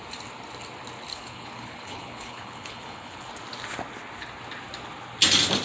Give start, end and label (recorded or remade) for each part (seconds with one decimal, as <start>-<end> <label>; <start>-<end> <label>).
0.0-1.1 recorded; 1.1-3.3 remade; 3.3-5.6 recorded